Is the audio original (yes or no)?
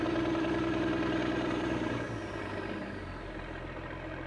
no